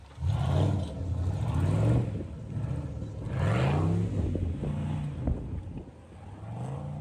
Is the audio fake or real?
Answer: real